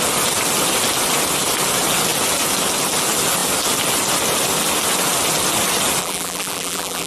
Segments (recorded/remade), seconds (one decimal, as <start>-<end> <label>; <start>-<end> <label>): 0.0-6.0 recorded; 6.0-7.1 remade